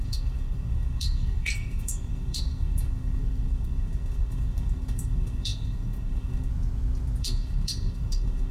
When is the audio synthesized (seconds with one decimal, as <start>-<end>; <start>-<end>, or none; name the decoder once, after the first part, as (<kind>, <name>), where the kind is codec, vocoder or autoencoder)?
0.0-6.5 (codec, SNAC); 7.2-8.5